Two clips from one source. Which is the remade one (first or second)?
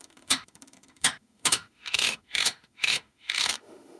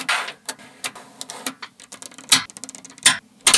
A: first